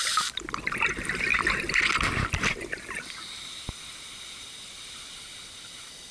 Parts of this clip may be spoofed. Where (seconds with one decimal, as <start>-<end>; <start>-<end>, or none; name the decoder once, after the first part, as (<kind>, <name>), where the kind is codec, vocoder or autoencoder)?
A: none